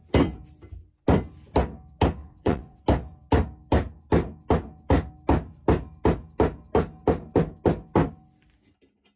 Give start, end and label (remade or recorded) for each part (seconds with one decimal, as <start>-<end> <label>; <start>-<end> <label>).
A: 0.0-2.2 recorded; 2.2-2.8 remade; 2.8-9.2 recorded